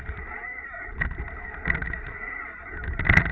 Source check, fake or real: real